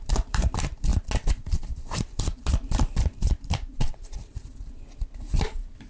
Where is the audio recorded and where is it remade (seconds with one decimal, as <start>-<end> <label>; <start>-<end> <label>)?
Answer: 0.0-0.9 remade; 0.9-1.7 recorded; 1.7-2.3 remade; 2.3-3.2 recorded; 3.2-4.4 remade; 4.4-5.9 recorded